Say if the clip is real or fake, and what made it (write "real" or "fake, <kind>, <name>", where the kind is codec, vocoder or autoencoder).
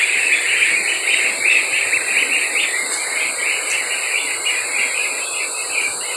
real